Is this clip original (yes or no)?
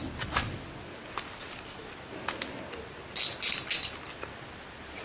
yes